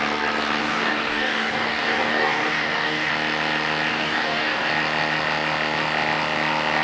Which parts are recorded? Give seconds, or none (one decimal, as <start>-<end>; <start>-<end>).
0.0-0.6; 3.1-3.9; 4.7-6.8